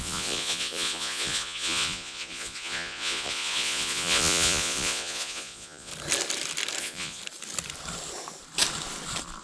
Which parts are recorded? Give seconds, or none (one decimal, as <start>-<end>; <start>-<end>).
5.9-6.8; 7.2-9.4